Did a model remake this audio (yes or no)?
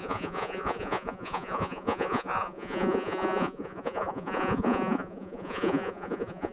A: yes